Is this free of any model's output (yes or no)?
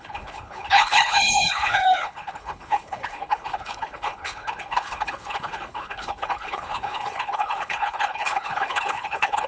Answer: no